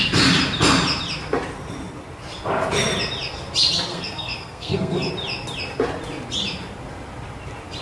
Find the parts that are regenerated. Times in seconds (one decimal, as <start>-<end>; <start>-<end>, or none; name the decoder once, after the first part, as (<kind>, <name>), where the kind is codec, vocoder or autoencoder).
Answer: 3.9-5.1 (codec, SNAC)